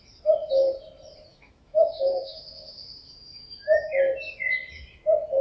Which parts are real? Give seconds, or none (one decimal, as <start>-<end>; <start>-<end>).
0.0-1.3; 4.0-5.4